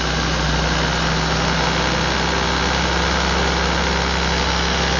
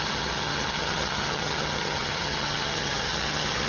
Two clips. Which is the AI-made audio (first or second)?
second